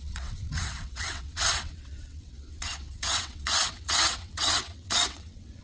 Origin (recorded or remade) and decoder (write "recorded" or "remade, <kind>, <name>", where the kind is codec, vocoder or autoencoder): remade, vocoder, WaveNeXt